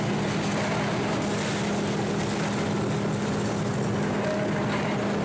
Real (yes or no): yes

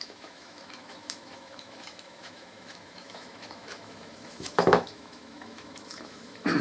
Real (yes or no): no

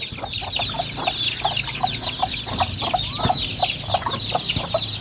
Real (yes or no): yes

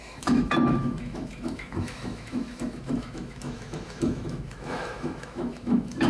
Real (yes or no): no